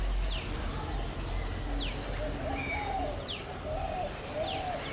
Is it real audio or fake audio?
real